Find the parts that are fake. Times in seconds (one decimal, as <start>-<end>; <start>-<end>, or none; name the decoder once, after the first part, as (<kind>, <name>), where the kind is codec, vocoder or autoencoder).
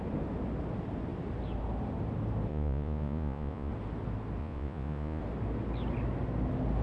2.5-3.7 (vocoder, Vocos); 4.4-5.2